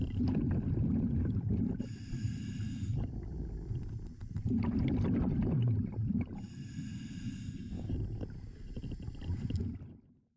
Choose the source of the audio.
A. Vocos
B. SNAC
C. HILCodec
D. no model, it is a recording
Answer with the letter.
D